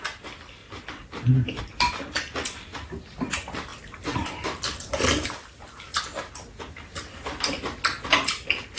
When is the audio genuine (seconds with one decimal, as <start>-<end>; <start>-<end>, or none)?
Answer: 0.0-0.6; 1.6-8.8